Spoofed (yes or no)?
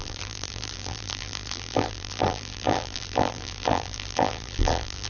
yes